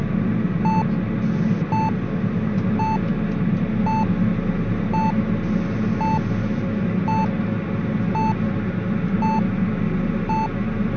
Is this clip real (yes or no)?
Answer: yes